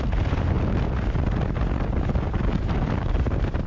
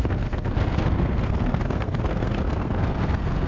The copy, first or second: second